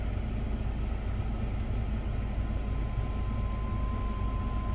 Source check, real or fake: real